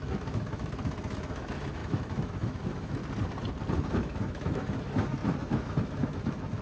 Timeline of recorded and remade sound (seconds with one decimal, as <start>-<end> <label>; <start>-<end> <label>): 0.0-3.0 remade; 3.0-3.8 recorded; 3.8-6.6 remade